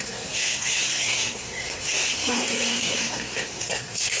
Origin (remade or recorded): remade